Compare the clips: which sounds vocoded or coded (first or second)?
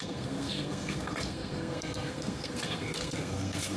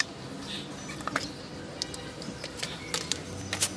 first